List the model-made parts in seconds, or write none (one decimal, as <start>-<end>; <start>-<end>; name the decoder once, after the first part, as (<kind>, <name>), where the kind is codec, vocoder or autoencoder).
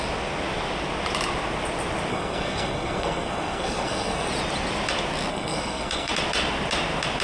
2.1-4.3 (codec, SNAC); 5.3-6.1